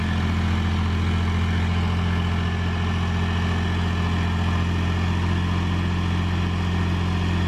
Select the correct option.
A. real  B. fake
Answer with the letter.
A